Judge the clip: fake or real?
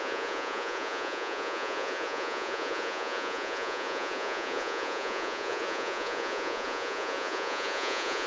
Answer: fake